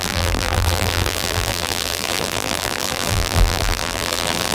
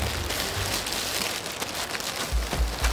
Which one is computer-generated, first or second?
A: first